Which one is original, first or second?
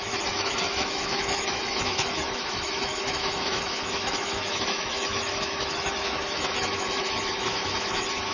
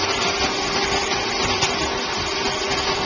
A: second